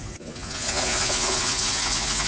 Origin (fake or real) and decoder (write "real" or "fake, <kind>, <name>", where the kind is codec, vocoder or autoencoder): fake, vocoder, Vocos